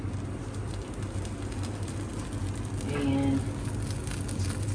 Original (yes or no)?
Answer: yes